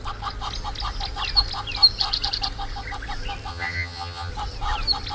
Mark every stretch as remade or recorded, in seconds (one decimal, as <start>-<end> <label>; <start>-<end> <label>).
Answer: 0.0-3.5 recorded; 3.5-4.3 remade; 4.3-5.1 recorded